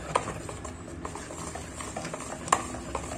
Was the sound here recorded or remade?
recorded